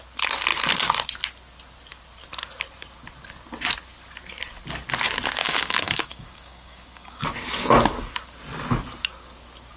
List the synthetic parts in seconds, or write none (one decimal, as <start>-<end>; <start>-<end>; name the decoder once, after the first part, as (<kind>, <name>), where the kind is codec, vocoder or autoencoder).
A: 5.4-7.2 (codec, DAC)